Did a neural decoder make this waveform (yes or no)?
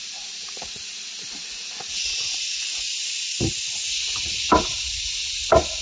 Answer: no